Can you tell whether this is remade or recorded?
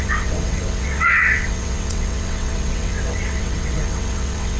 remade